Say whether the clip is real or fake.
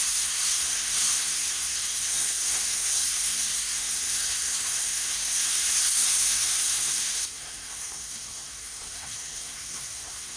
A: fake